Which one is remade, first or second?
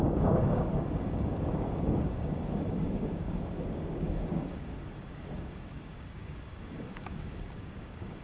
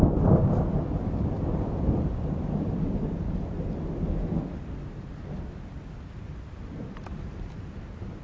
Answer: first